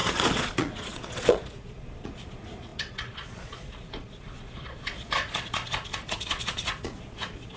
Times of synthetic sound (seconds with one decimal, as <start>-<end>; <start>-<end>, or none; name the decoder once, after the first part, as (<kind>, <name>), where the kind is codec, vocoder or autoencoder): 0.0-7.6 (vocoder, Vocos)